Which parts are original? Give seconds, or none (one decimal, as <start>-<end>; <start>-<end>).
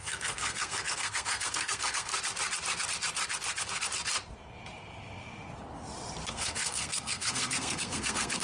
2.1-6.3